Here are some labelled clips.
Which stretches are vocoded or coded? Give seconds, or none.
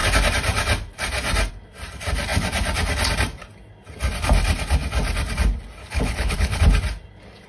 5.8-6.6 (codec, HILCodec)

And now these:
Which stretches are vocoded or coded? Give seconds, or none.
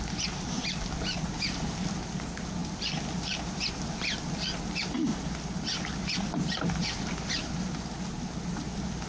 none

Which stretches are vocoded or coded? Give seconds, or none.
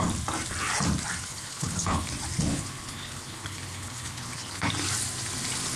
1.3-2.1 (codec, HILCodec); 2.5-4.7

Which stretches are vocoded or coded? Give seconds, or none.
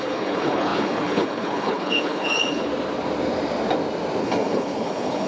0.0-2.7 (codec, HILCodec); 4.2-5.3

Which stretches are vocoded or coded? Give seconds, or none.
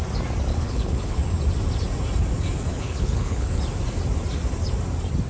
0.5-1.2 (codec, HILCodec); 2.7-3.6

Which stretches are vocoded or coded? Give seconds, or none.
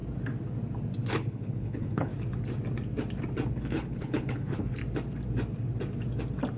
1.1-2.1 (codec, HILCodec); 3.5-4.8